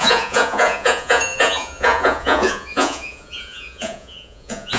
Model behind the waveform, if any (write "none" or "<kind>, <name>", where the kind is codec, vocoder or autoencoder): vocoder, Vocos